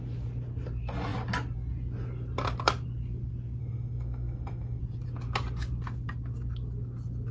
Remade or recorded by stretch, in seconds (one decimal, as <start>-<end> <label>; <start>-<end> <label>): 0.0-3.6 recorded; 3.6-4.8 remade; 4.8-7.3 recorded